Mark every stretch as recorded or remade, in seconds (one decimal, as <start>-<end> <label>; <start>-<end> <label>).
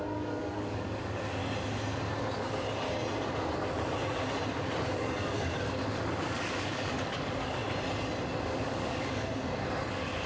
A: 0.0-1.4 remade; 1.4-4.9 recorded; 4.9-7.6 remade; 7.6-8.4 recorded; 8.4-9.3 remade; 9.3-9.9 recorded; 9.9-10.3 remade